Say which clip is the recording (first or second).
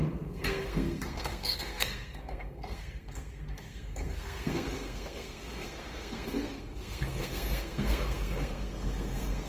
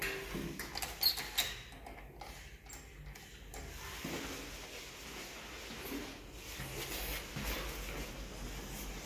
second